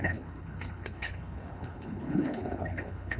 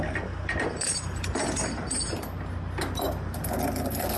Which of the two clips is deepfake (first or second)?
first